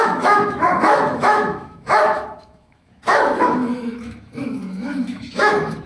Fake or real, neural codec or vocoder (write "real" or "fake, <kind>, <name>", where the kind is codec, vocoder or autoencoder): fake, autoencoder, DAC-VAE